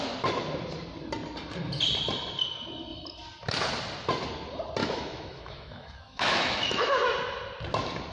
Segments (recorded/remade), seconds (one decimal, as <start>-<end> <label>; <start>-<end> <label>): 0.0-4.8 recorded; 4.8-6.9 remade; 6.9-8.1 recorded